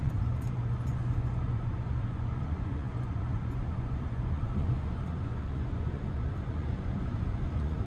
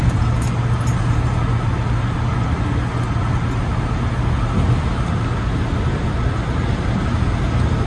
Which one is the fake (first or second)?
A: first